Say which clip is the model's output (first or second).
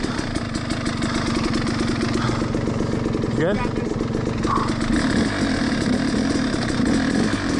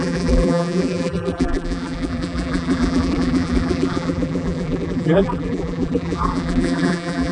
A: second